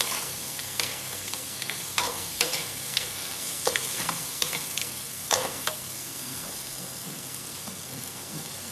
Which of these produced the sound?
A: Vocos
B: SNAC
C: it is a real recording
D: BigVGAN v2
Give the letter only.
B